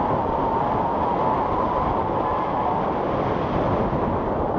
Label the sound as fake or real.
real